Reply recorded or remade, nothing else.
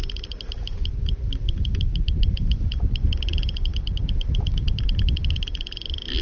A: recorded